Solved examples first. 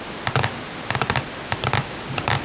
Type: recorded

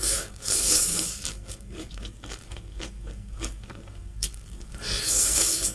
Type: remade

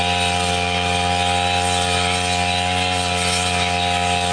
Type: recorded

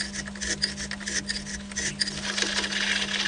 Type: recorded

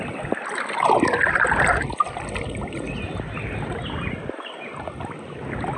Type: recorded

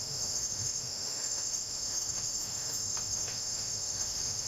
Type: remade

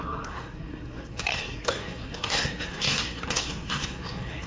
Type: remade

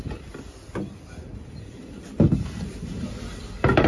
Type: recorded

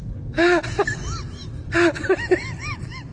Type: recorded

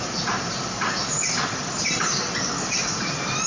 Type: recorded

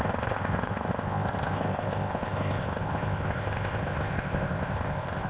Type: remade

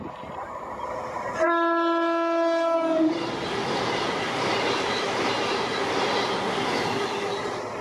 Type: recorded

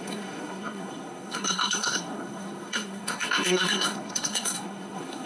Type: remade